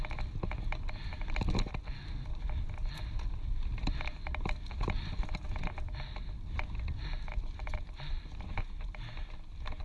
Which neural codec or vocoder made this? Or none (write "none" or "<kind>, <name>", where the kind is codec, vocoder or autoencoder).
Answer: none